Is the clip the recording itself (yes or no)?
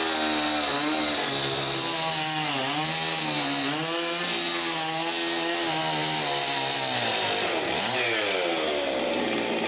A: yes